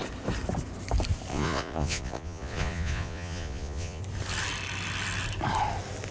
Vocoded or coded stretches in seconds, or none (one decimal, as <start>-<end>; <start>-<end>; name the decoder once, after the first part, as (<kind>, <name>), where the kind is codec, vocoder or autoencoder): 1.3-4.0 (vocoder, Vocos)